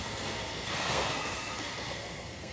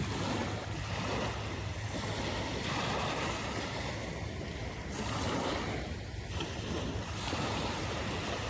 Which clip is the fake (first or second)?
first